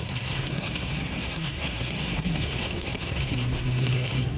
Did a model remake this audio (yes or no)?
yes